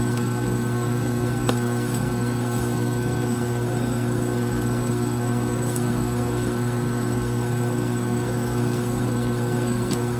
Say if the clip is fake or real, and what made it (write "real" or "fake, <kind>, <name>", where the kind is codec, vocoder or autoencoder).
fake, codec, SNAC